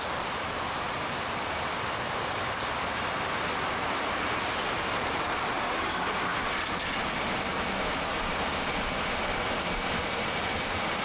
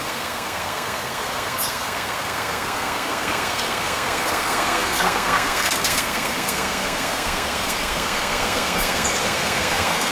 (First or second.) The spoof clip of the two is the second